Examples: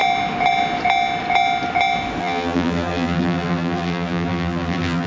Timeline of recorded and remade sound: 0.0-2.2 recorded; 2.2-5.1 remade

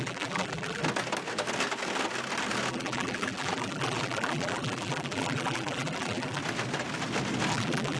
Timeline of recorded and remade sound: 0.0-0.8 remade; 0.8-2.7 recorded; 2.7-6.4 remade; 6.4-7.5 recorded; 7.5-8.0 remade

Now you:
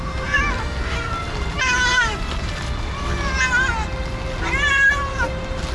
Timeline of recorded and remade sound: 0.0-1.9 recorded; 1.9-2.5 remade; 2.5-5.7 recorded

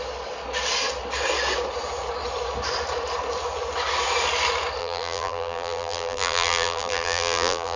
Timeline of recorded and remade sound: 0.0-4.8 recorded; 4.8-7.8 remade